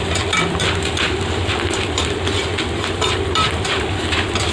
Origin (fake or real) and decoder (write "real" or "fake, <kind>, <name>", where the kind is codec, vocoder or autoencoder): fake, vocoder, BigVGAN v2